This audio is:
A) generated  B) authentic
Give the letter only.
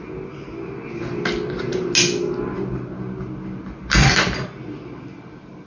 B